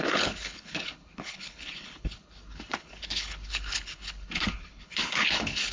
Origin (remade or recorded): remade